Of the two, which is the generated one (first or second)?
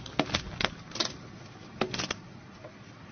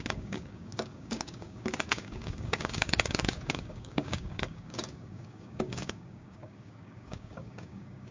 second